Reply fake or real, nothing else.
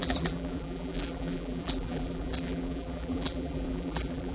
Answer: fake